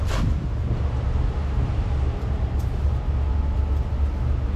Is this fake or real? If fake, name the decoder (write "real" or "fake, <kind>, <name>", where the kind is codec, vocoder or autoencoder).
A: real